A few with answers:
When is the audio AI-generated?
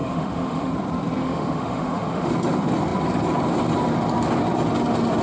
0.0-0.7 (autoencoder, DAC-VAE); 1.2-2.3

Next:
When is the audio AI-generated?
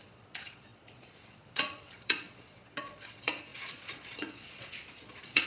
0.0-5.5 (vocoder, Vocos)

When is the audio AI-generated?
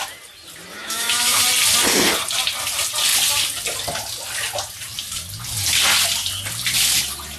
0.8-1.4 (autoencoder, DAC-VAE)